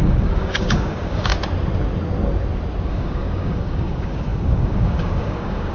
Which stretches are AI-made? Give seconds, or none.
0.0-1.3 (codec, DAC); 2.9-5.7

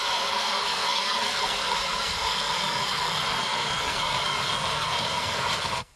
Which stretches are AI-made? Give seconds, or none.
0.0-6.0 (codec, SNAC)

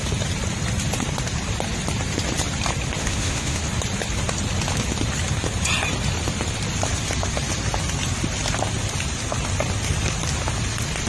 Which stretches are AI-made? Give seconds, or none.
3.0-3.6 (autoencoder, DAC-VAE)

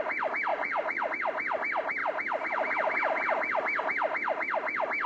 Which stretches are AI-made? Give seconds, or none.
0.5-1.1 (vocoder, Vocos)

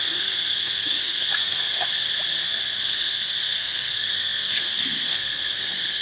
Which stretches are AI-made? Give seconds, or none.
0.0-1.9 (codec, SNAC); 2.4-6.0

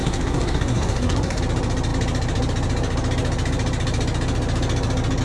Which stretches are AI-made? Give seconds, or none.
0.0-1.4 (codec, SNAC)

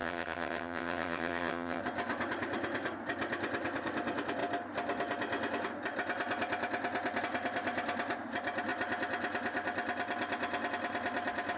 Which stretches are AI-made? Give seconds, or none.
0.0-1.8 (vocoder, HiFi-GAN)

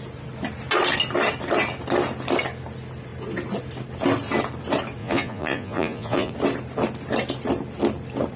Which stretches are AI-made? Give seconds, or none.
5.0-6.3 (vocoder, Vocos)